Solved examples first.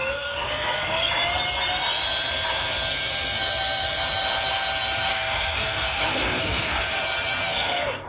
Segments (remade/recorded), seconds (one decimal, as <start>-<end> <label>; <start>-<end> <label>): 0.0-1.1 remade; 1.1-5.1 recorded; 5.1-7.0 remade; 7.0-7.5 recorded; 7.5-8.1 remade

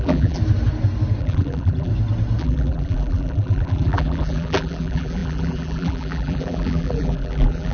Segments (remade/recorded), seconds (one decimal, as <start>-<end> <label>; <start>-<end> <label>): 0.0-0.4 remade; 0.4-1.2 recorded; 1.2-1.9 remade; 1.9-2.4 recorded; 2.4-7.7 remade

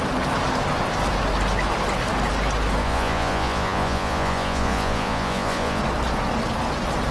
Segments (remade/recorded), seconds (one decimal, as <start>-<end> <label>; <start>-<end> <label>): 0.0-2.8 recorded; 2.8-5.8 remade; 5.8-7.1 recorded